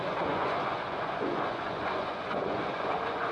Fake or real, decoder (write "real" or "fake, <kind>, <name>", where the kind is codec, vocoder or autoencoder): fake, vocoder, Vocos